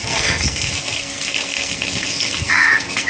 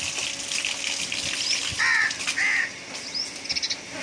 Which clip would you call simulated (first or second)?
first